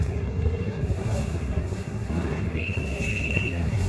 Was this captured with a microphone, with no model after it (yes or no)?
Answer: no